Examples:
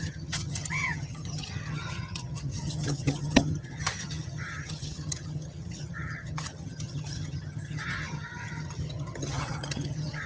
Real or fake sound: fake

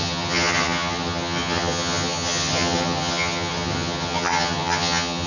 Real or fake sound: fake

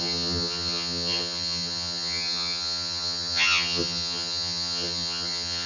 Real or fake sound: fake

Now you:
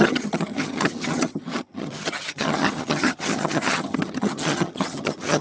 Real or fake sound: fake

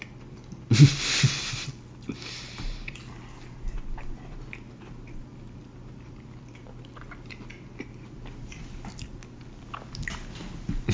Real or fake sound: real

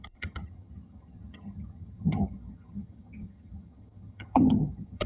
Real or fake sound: fake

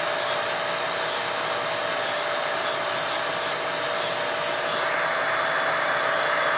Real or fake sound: real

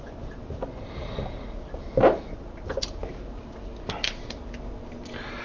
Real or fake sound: real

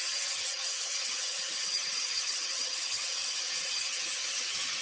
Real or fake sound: fake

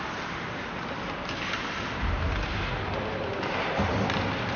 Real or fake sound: real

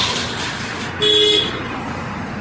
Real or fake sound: real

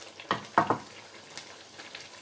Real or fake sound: real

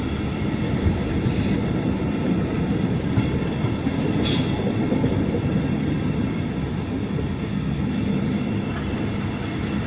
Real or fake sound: real